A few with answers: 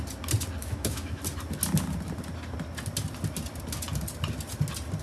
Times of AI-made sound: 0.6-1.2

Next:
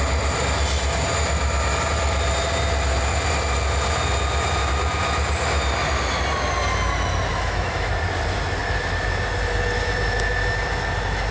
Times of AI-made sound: 7.3-7.9

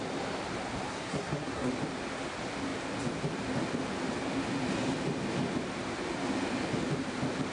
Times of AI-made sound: 0.9-1.7

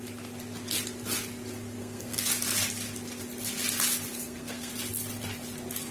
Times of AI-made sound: 1.8-2.3; 4.1-4.7

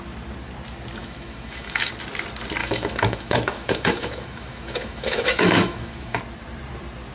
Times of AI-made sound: 1.0-1.9; 2.6-6.2